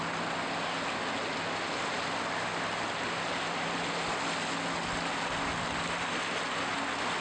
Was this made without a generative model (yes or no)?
yes